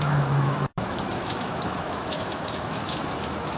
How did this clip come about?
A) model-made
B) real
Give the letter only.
A